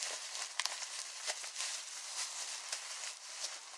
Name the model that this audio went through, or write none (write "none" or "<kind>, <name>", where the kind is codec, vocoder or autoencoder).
none